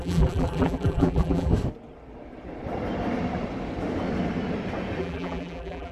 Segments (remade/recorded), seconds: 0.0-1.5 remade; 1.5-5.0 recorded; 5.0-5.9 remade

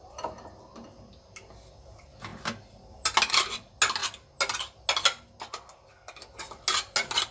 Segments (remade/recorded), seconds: 0.0-7.3 recorded

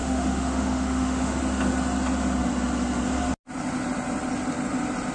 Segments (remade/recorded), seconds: 0.0-1.4 remade; 1.4-5.1 recorded

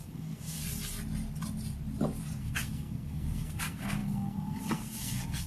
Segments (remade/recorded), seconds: 0.0-0.6 remade; 0.6-2.4 recorded; 2.4-5.5 remade

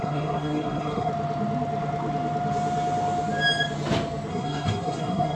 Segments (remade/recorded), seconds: 0.0-1.1 remade; 1.1-4.3 recorded; 4.3-5.4 remade

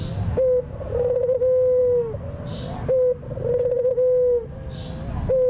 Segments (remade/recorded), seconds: 0.0-5.5 recorded